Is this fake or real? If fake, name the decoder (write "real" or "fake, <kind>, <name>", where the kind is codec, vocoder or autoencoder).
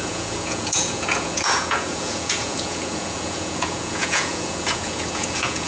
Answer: fake, vocoder, Vocos